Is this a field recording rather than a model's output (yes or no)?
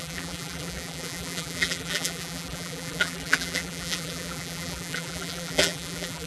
no